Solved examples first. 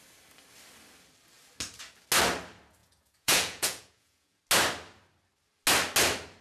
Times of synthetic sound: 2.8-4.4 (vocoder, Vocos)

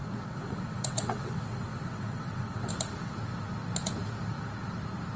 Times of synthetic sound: 0.0-2.7 (vocoder, WaveNeXt)

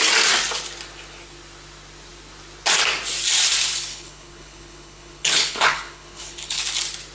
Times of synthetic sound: 3.9-6.6 (codec, HILCodec)

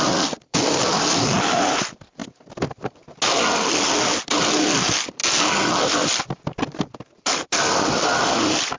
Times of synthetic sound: 0.0-2.2 (vocoder, BigVGAN v2); 4.2-5.2; 5.8-8.8

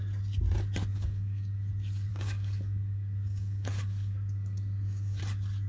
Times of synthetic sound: 0.9-1.7 (codec, DAC); 2.1-5.2

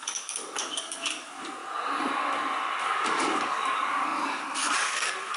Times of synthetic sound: 0.0-1.6 (codec, DAC); 2.8-5.4